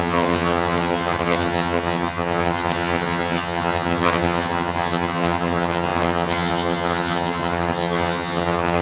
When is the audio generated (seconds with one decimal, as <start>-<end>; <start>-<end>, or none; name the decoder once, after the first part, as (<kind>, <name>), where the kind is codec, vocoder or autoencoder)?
0.0-8.8 (vocoder, HiFi-GAN)